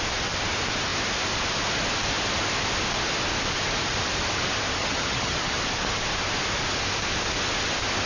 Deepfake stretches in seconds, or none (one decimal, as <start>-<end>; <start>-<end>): 4.8-5.6